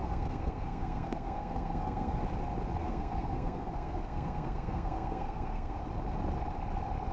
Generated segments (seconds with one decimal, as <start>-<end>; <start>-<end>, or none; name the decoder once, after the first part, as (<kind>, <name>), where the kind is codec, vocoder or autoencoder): 0.0-2.2 (codec, SNAC); 2.8-5.8